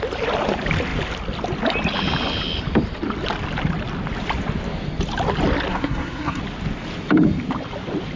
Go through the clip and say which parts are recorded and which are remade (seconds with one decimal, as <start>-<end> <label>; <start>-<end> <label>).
0.0-5.7 recorded; 5.7-6.4 remade; 6.4-8.2 recorded